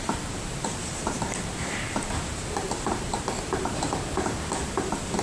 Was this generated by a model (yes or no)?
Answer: yes